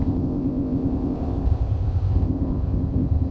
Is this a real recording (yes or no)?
no